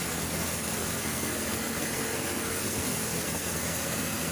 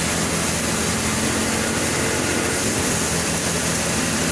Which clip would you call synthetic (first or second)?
first